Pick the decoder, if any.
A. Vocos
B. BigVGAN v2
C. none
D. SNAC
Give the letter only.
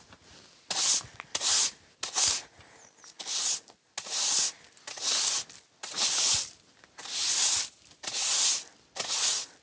C